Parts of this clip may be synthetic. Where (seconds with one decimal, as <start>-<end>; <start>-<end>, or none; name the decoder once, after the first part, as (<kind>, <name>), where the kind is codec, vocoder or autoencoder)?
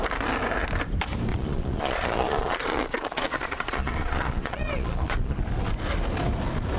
1.3-5.4 (vocoder, Vocos)